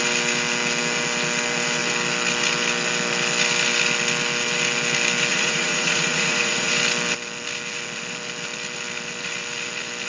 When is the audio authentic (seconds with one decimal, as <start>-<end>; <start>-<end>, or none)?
0.0-5.3; 6.7-10.1